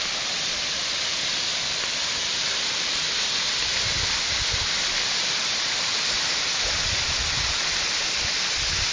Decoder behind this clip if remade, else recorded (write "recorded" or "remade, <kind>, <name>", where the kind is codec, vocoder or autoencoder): remade, vocoder, BigVGAN v2